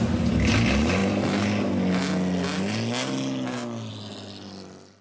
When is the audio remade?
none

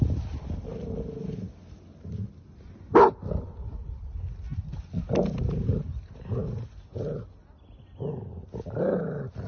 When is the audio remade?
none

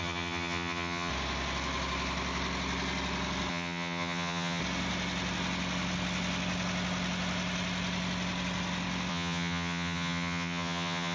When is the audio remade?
0.0-1.1 (vocoder, HiFi-GAN); 3.5-4.6; 9.1-11.1

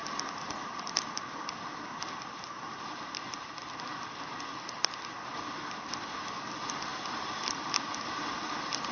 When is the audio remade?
none